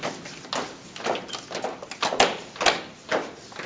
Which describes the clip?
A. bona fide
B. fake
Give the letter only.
A